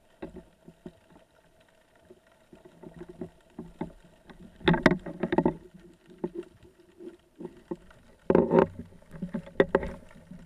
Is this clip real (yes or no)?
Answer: yes